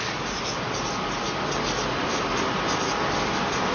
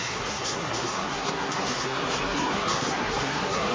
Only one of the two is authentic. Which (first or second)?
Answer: first